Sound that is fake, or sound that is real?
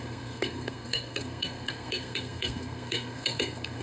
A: fake